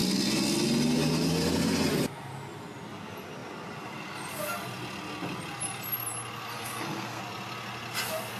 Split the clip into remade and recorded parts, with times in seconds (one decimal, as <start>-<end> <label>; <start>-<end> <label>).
0.0-6.5 recorded; 6.5-7.2 remade; 7.2-8.4 recorded